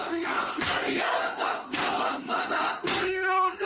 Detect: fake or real fake